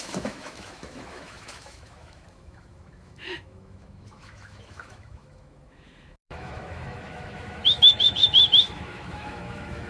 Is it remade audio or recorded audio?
remade